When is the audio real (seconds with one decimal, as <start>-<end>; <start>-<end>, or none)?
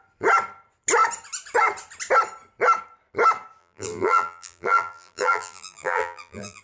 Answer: 0.0-3.6